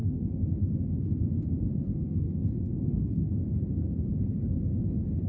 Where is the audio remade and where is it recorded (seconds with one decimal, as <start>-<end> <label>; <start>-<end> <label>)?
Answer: 0.0-0.6 remade; 0.6-1.7 recorded; 1.7-3.4 remade; 3.4-5.3 recorded